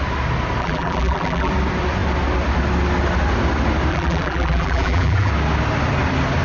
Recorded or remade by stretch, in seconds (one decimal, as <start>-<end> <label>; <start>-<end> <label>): 0.0-0.6 recorded; 0.6-1.5 remade; 1.5-3.9 recorded; 3.9-5.3 remade; 5.3-6.4 recorded

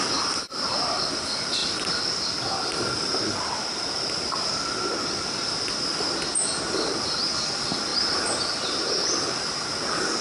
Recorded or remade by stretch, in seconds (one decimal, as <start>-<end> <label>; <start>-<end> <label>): 0.0-10.2 recorded

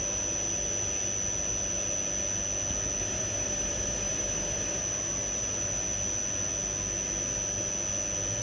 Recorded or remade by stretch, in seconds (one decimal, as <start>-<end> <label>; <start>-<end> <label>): 0.0-3.0 recorded; 3.0-4.8 remade; 4.8-8.4 recorded

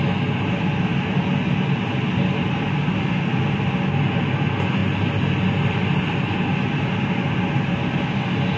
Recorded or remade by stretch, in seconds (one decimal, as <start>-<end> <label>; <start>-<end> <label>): 0.0-8.6 recorded

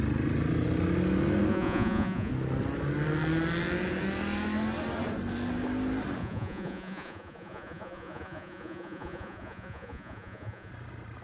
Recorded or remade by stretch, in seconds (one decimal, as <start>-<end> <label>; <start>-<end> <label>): 0.0-1.5 recorded; 1.5-2.3 remade; 2.3-6.2 recorded; 6.2-10.7 remade; 10.7-11.2 recorded

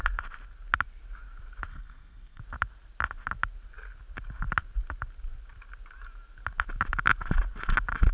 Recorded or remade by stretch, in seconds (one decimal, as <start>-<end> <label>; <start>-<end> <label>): 0.0-1.7 recorded; 1.7-2.4 remade; 2.4-8.1 recorded

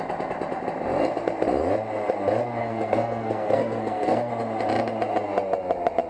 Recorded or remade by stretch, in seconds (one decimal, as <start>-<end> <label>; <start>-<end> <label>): 0.0-2.6 recorded; 2.6-4.3 remade; 4.3-6.1 recorded

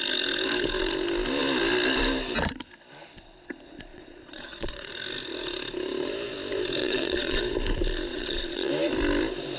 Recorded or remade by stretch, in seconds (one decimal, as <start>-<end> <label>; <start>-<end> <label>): 0.0-3.9 recorded; 3.9-4.9 remade; 4.9-6.8 recorded; 6.8-7.4 remade; 7.4-8.1 recorded; 8.1-8.7 remade; 8.7-9.6 recorded